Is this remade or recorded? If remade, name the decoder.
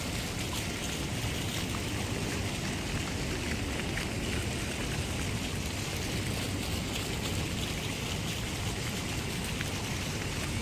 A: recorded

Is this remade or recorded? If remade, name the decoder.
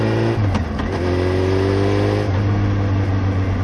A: recorded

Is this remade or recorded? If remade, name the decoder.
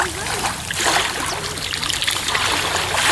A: recorded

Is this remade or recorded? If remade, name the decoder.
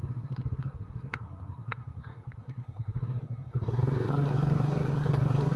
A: remade, codec, SNAC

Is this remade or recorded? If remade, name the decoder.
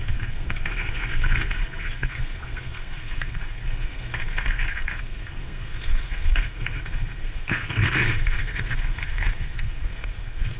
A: remade, codec, SNAC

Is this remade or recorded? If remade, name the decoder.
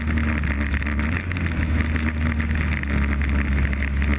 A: recorded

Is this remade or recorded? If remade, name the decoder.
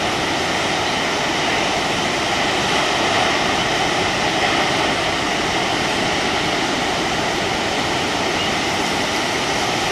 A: recorded